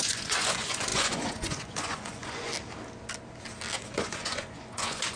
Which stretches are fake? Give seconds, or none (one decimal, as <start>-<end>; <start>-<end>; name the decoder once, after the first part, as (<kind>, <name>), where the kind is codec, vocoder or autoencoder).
0.0-2.5 (vocoder, Vocos); 3.8-5.2